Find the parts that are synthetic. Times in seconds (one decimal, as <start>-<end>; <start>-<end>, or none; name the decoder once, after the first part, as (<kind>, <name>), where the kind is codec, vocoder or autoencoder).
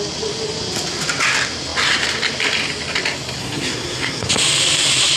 3.4-4.3 (codec, SNAC)